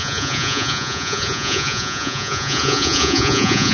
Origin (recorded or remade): remade